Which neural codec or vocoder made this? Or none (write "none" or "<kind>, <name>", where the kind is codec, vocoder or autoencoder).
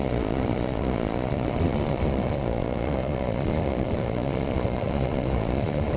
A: vocoder, Vocos